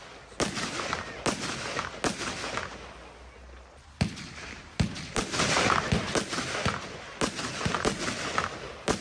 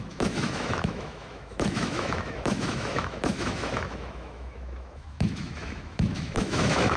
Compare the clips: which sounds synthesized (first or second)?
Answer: second